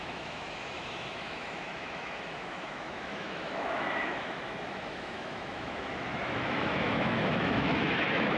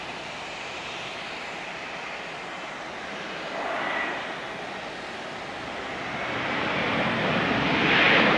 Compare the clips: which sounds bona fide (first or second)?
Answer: second